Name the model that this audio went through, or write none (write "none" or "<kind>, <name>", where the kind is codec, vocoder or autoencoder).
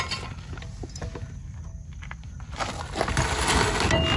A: none